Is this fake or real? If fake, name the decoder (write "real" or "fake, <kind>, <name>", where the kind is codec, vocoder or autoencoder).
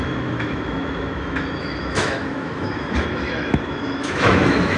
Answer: fake, autoencoder, DAC-VAE